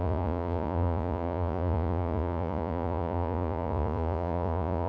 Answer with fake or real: fake